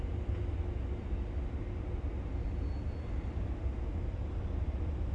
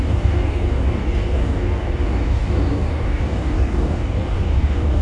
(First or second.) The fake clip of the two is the second